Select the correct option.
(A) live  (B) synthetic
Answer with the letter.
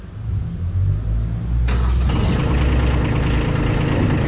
A